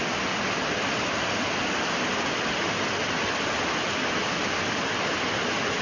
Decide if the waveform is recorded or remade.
recorded